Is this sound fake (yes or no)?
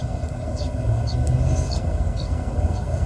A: yes